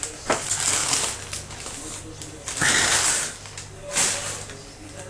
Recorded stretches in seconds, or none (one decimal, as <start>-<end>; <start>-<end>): 0.0-5.1